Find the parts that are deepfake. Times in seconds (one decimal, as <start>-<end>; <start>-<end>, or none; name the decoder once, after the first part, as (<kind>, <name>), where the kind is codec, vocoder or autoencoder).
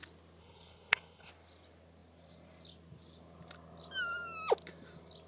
0.4-1.3 (codec, HILCodec)